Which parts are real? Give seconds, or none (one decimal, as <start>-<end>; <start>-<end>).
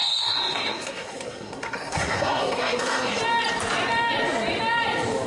3.2-5.3